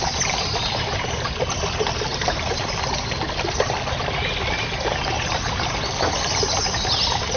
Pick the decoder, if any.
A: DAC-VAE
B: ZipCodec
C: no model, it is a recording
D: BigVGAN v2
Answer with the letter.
C